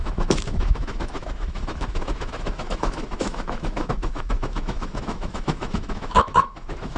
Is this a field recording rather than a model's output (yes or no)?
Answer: no